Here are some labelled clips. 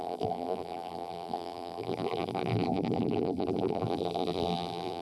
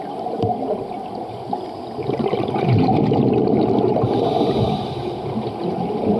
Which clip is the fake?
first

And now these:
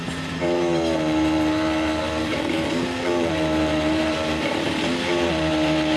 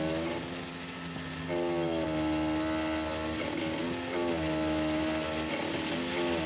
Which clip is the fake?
first